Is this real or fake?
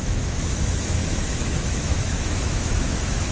fake